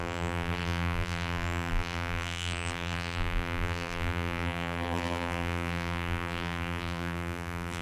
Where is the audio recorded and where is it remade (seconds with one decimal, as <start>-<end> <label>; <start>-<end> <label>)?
0.0-7.8 remade